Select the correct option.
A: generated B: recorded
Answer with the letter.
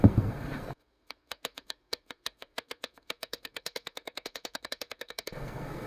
A